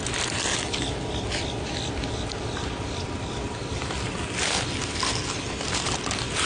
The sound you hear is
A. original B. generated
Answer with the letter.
A